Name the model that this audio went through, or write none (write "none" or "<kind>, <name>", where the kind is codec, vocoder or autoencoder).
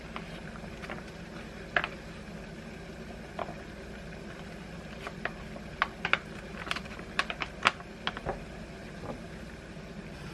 none